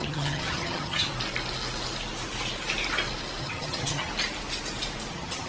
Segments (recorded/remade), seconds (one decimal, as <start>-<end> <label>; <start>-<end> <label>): 0.0-1.1 remade; 1.1-3.4 recorded; 3.4-4.1 remade; 4.1-5.1 recorded; 5.1-5.5 remade